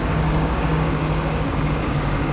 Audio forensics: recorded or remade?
remade